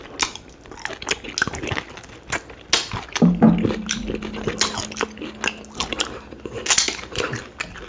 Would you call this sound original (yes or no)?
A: yes